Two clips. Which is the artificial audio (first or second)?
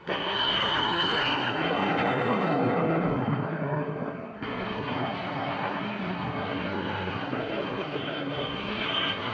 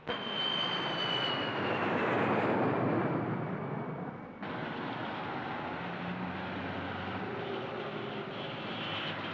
first